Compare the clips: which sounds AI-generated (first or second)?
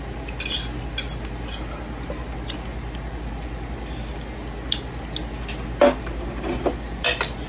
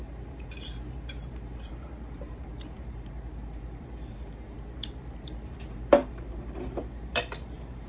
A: second